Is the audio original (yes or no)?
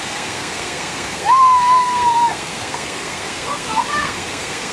no